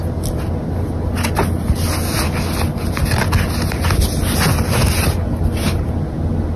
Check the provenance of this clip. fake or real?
real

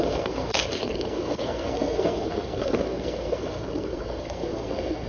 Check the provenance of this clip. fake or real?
fake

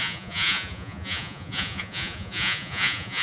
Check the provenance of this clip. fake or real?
fake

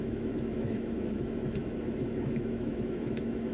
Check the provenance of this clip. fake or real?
fake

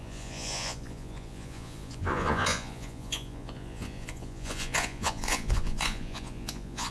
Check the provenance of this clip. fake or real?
fake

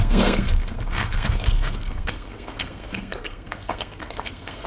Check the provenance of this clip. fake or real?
fake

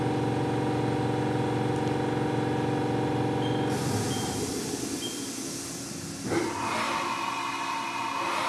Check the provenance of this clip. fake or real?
real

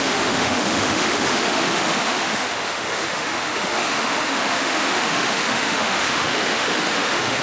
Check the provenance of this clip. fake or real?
fake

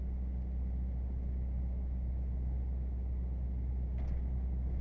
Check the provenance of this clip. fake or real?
real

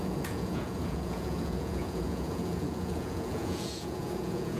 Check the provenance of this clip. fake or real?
fake